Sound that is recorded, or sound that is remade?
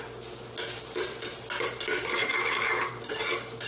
recorded